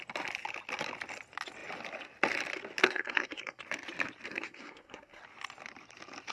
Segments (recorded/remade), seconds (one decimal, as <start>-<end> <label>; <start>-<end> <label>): 0.0-2.8 recorded; 2.8-3.6 remade; 3.6-4.3 recorded; 4.3-5.2 remade; 5.2-6.3 recorded